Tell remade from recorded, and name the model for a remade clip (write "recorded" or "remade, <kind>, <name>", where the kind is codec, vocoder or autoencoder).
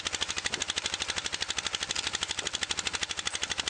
recorded